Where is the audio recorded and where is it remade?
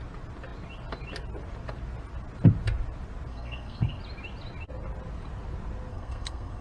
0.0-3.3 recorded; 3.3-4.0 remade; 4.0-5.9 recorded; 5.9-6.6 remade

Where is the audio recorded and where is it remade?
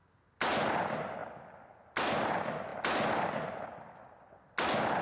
0.0-5.0 recorded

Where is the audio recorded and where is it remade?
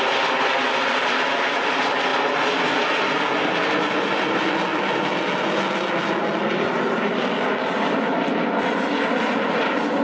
0.0-10.0 recorded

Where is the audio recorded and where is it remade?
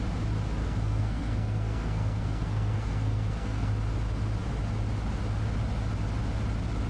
0.0-0.6 recorded; 0.6-3.7 remade; 3.7-6.9 recorded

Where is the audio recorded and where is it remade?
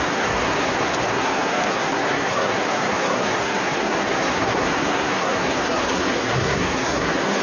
0.0-7.4 remade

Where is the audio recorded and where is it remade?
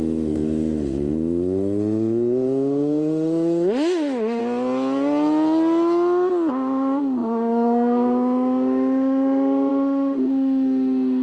0.0-4.4 remade; 4.4-6.5 recorded; 6.5-11.2 remade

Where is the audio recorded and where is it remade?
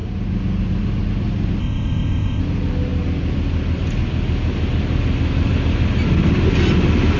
0.0-1.6 recorded; 1.6-2.4 remade; 2.4-7.2 recorded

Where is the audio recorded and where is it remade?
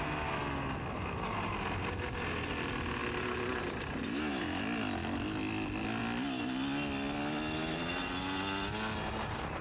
0.0-9.6 recorded